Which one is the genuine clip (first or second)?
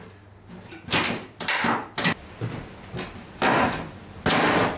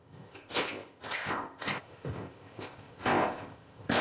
first